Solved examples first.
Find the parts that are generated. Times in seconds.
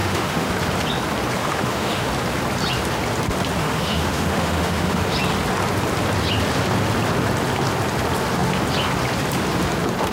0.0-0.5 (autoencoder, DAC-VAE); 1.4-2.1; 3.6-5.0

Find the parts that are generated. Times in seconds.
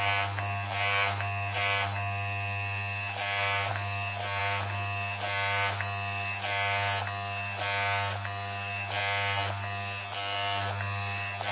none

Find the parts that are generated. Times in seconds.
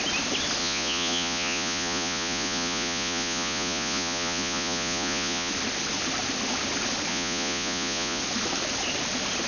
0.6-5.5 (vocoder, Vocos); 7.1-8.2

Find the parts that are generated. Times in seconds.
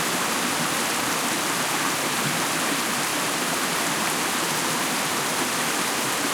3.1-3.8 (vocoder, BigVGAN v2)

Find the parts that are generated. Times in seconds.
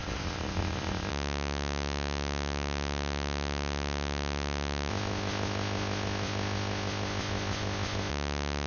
0.0-1.1 (codec, ZipCodec); 4.9-8.1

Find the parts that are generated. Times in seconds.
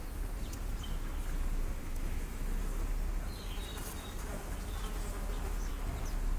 1.8-2.6 (autoencoder, DAC-VAE)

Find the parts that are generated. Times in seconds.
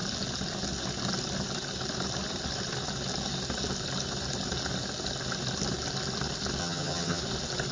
6.6-7.2 (vocoder, HiFi-GAN)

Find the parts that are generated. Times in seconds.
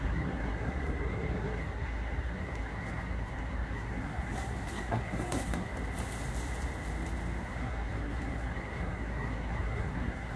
0.0-5.7 (codec, SNAC); 7.4-10.4